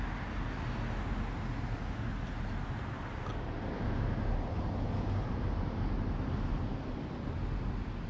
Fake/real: real